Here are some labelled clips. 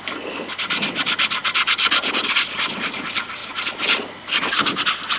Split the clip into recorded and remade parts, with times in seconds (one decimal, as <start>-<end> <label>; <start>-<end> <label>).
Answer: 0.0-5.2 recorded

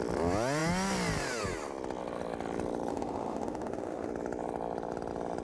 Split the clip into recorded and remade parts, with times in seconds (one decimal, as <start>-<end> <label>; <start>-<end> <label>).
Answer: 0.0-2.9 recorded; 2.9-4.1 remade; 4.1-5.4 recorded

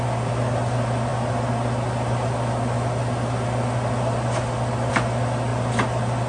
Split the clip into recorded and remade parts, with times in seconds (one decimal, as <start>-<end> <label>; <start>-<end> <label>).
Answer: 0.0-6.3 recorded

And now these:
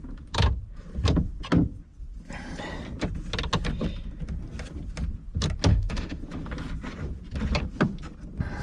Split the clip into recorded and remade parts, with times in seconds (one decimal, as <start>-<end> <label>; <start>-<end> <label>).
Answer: 0.0-5.7 recorded; 5.7-6.2 remade; 6.2-8.6 recorded

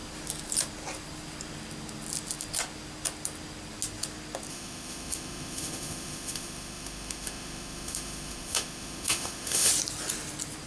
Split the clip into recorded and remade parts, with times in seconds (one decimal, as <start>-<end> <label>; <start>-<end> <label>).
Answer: 0.0-4.5 recorded; 4.5-9.7 remade; 9.7-10.7 recorded